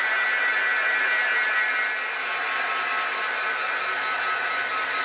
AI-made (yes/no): no